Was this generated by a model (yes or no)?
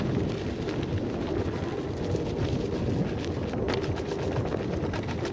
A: no